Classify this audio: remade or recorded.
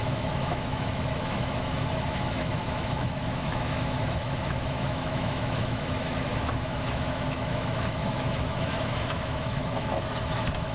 remade